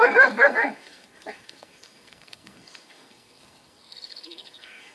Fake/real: fake